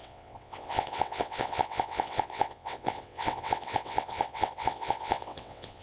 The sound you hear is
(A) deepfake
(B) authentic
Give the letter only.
A